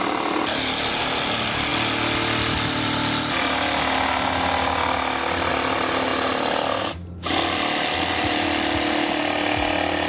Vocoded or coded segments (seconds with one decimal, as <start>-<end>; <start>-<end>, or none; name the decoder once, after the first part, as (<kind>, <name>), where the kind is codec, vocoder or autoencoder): none